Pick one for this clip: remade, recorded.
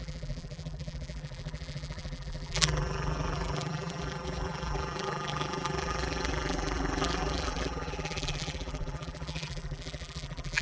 remade